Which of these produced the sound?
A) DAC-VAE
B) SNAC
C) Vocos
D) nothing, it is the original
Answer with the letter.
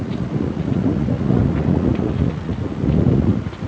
C